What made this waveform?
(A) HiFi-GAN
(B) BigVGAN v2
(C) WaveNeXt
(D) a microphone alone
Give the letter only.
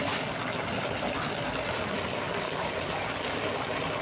D